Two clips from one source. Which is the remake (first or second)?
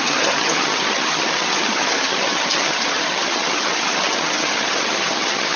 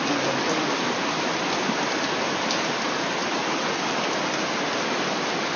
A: first